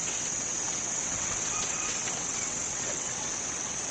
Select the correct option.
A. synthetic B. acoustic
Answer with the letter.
A